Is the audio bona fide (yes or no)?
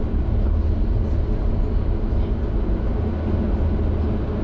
yes